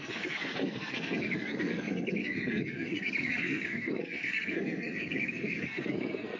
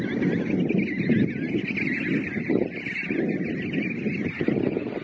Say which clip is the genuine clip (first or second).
second